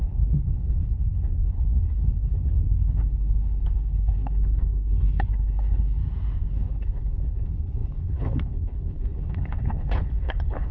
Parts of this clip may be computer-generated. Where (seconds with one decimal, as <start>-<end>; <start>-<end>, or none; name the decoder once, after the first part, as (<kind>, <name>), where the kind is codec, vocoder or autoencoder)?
0.0-6.0 (codec, HILCodec); 6.5-10.7